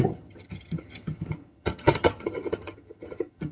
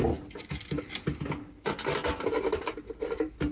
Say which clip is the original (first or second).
second